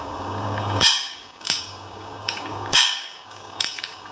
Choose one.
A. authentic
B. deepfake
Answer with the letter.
B